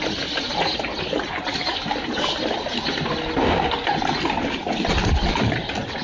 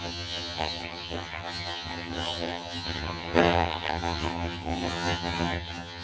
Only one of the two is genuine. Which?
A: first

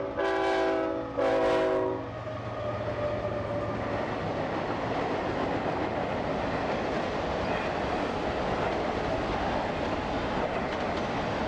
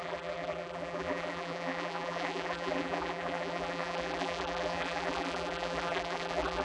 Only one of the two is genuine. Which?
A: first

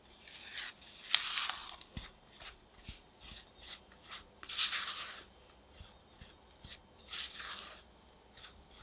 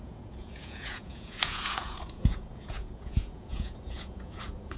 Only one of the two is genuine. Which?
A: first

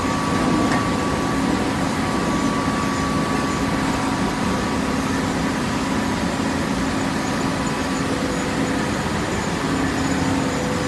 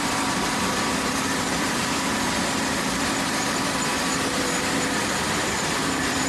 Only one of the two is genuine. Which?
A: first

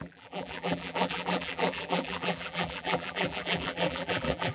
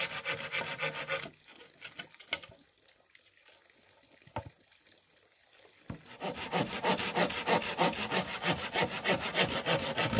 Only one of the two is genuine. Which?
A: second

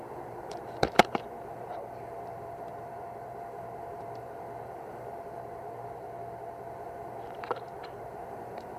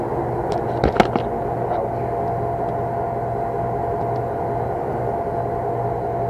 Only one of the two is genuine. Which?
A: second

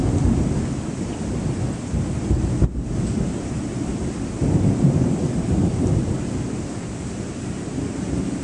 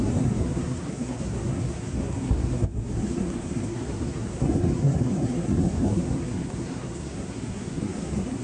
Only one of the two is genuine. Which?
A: first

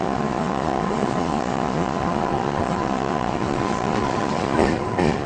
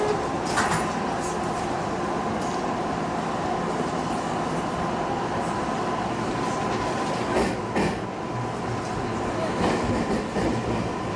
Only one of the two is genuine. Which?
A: second